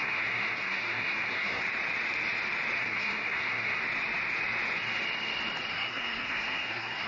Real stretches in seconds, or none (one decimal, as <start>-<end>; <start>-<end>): 1.6-2.8; 3.8-5.7